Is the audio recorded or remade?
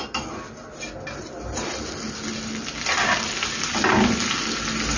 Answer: recorded